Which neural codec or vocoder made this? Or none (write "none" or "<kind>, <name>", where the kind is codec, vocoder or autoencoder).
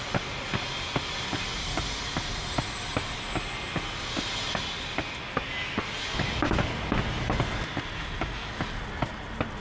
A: none